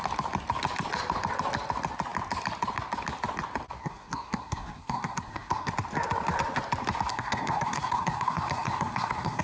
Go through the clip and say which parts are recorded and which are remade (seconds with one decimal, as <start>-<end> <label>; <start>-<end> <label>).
0.0-3.8 recorded; 3.8-5.7 remade; 5.7-7.1 recorded; 7.1-9.4 remade